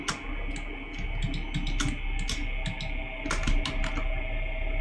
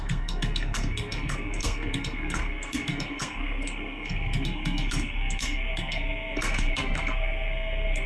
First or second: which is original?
first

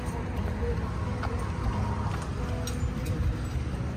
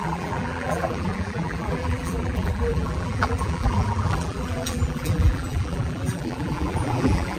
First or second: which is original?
first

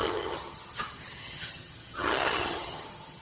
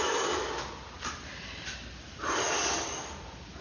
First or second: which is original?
second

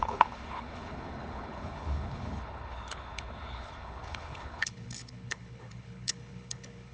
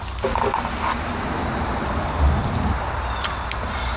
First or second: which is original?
second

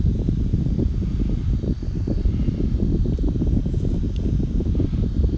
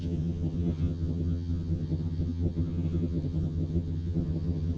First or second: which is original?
first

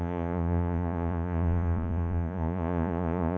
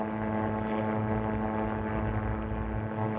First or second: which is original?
second